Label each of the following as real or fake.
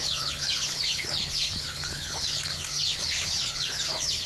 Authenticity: fake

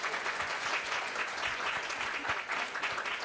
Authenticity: fake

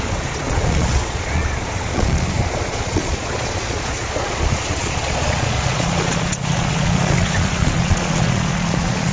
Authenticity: fake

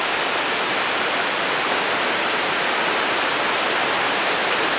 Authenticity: real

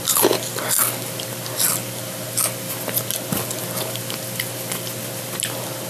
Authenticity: real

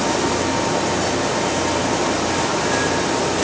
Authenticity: real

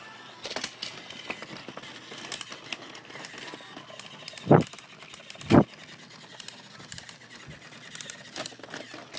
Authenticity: real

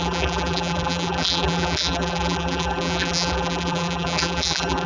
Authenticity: fake